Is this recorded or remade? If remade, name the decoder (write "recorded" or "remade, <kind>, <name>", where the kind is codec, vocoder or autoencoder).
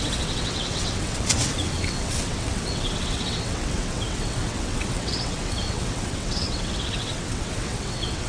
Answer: remade, vocoder, WaveNeXt